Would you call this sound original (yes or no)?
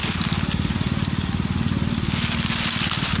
yes